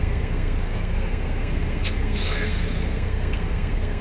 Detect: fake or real fake